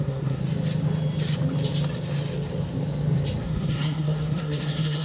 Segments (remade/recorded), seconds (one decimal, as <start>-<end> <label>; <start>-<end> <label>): 0.0-0.4 remade; 0.4-3.4 recorded; 3.4-5.0 remade